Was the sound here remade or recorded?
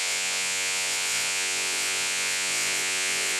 remade